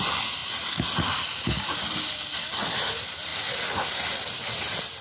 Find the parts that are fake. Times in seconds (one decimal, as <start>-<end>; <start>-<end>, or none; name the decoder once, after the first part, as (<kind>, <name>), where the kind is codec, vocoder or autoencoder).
none